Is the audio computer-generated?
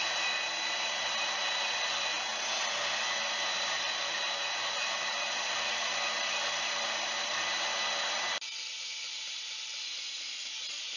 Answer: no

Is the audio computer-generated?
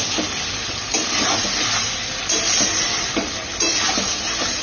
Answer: no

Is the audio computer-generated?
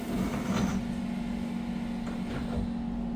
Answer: no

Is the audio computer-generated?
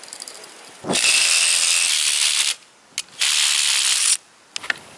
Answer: no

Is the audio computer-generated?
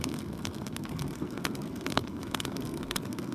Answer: yes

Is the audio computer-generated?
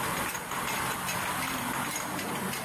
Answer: no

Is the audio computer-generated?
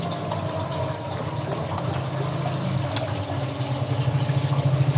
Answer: no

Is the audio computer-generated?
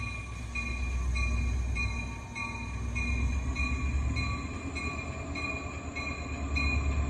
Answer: no